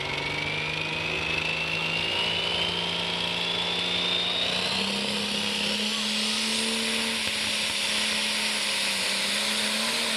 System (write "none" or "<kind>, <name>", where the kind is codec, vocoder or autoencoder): none